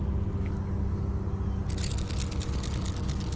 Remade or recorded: recorded